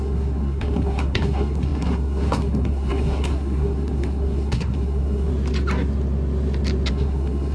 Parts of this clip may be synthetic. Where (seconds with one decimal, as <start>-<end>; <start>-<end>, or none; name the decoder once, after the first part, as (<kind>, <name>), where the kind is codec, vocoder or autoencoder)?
0.0-5.3 (codec, SNAC); 6.9-7.5